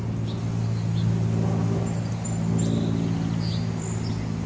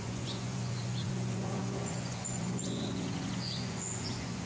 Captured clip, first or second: first